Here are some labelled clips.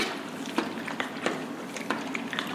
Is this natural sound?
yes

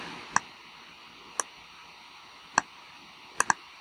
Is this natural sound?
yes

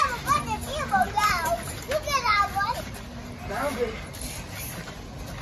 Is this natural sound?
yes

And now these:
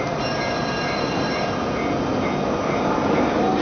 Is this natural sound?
yes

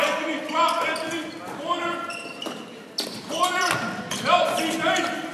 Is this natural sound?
no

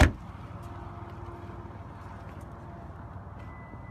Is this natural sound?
yes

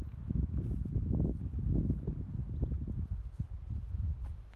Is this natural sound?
yes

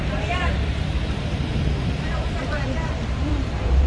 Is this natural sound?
no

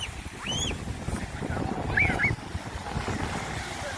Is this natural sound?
yes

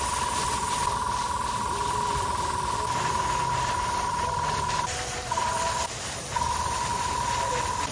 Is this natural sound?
no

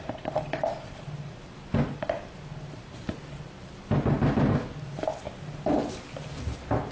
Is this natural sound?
no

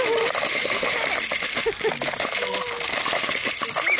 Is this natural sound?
yes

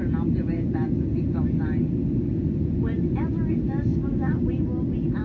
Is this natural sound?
yes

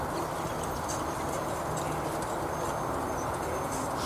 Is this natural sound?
yes